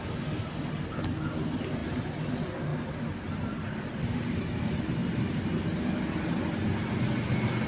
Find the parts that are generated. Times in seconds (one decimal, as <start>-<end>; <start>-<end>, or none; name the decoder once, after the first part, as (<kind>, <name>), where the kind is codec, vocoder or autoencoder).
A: none